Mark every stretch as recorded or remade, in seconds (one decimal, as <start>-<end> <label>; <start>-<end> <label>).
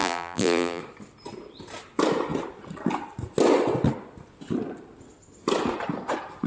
0.0-0.8 remade; 0.8-6.5 recorded